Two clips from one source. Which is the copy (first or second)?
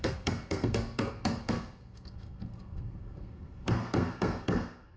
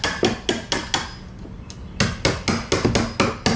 first